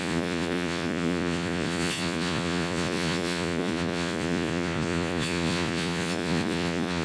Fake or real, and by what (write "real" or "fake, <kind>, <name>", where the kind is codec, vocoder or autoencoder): fake, vocoder, Vocos